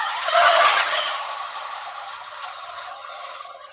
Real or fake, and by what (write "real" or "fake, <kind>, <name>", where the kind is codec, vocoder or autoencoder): fake, vocoder, HiFi-GAN